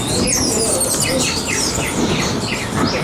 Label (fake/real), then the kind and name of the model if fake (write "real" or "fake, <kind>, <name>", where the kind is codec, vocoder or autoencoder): real